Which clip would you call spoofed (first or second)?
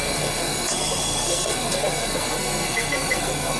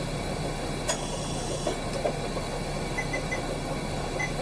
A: first